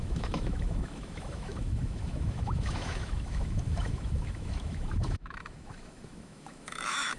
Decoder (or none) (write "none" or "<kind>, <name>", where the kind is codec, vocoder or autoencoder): autoencoder, DAC-VAE